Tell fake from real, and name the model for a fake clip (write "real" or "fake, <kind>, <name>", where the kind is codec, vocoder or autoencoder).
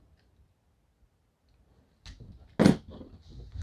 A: real